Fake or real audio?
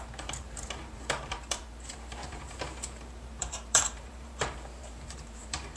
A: fake